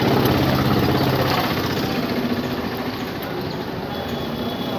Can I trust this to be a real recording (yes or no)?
yes